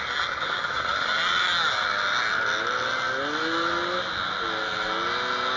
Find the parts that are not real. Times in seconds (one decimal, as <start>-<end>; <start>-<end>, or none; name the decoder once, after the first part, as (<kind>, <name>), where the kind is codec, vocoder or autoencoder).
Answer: none